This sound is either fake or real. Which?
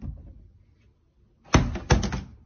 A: real